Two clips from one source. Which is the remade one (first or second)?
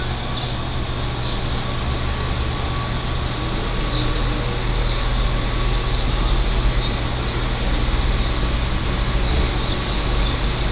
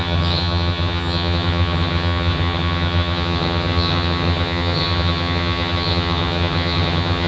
second